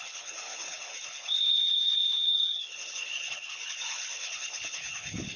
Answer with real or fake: fake